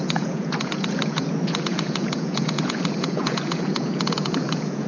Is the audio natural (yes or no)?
no